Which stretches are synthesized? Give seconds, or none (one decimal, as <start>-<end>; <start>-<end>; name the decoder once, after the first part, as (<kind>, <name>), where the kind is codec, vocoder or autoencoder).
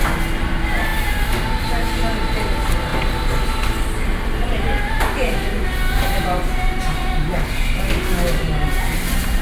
none